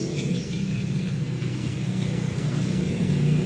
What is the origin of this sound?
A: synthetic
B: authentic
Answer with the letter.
A